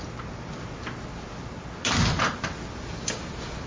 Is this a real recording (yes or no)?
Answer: yes